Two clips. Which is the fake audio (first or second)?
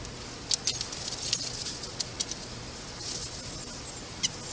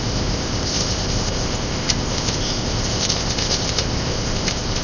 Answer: second